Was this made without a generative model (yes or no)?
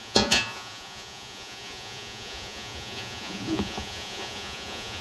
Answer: no